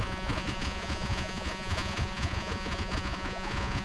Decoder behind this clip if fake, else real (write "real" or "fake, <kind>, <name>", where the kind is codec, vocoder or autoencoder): fake, vocoder, Vocos